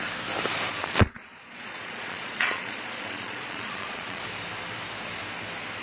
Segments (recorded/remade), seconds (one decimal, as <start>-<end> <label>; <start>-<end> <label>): 0.0-0.8 recorded; 0.8-4.2 remade; 4.2-5.8 recorded